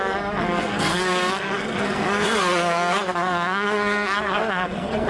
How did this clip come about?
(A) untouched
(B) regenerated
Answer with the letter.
B